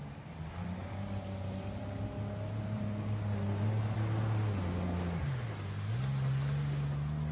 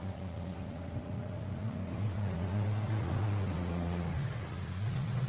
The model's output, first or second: second